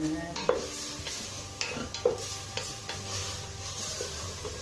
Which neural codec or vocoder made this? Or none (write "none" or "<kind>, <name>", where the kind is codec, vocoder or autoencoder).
none